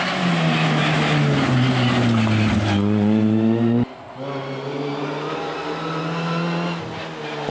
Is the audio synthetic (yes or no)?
no